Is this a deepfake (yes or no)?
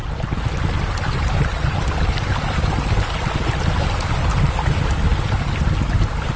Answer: no